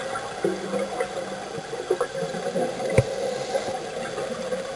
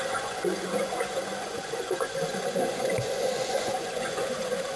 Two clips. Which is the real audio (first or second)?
first